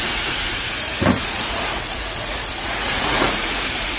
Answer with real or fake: fake